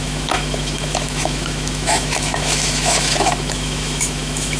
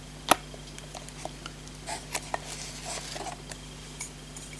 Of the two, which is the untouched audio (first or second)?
second